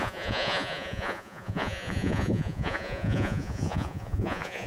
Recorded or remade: remade